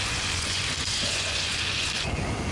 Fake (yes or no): yes